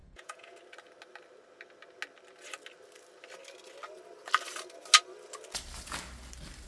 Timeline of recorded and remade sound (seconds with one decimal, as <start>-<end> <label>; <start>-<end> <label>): 0.0-0.6 remade; 0.6-6.7 recorded

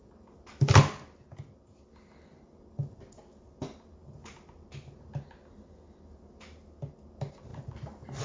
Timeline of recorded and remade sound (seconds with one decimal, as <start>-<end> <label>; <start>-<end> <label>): 0.0-7.5 recorded; 7.5-8.2 remade

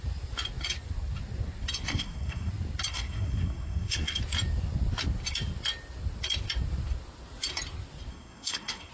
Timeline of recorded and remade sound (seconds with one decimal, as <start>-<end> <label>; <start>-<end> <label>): 0.0-1.9 recorded; 1.9-2.5 remade; 2.5-2.9 recorded; 2.9-4.2 remade; 4.2-8.1 recorded; 8.1-8.9 remade

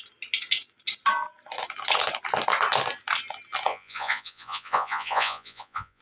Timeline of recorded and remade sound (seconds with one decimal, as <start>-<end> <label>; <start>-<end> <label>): 0.0-3.7 recorded; 3.7-6.0 remade

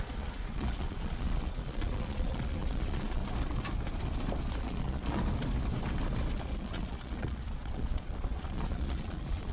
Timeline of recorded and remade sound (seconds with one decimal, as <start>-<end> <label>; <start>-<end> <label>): 0.0-3.2 remade; 3.2-4.6 recorded; 4.6-5.2 remade; 5.2-6.6 recorded; 6.6-9.5 remade

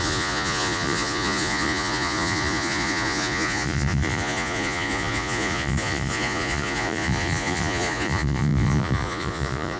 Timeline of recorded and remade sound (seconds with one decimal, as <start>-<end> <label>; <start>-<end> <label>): 0.0-9.8 remade

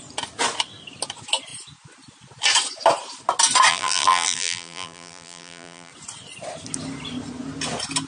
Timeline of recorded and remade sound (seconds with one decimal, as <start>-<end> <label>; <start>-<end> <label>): 0.0-3.7 recorded; 3.7-5.9 remade; 5.9-8.1 recorded

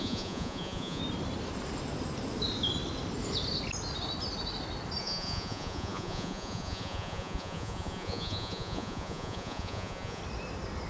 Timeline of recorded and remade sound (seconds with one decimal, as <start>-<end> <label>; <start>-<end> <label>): 0.0-1.0 remade; 1.0-5.0 recorded; 5.0-10.2 remade; 10.2-10.9 recorded